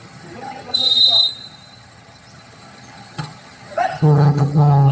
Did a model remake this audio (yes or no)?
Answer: yes